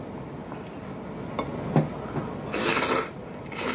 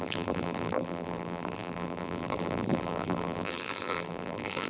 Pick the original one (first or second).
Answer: first